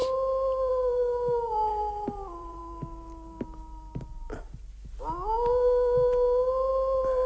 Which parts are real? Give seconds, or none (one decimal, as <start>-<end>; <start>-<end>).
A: 0.0-0.7; 2.6-7.3